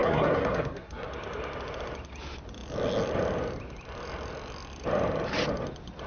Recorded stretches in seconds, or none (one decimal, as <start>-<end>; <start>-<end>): 1.1-6.1